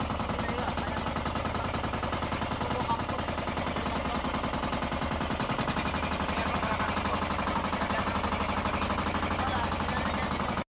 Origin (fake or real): real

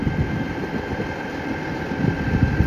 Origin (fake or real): real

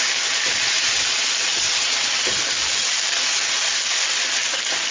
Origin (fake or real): real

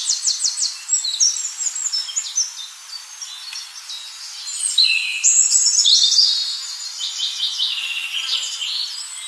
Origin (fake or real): real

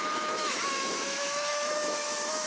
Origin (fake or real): fake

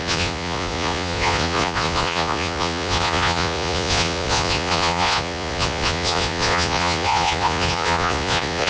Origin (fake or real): fake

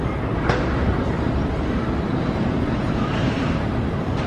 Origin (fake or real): fake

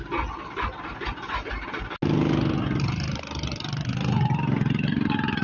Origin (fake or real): real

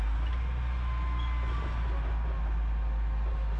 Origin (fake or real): real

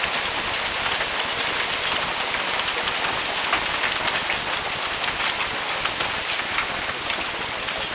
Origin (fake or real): real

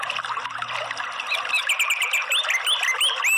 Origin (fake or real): real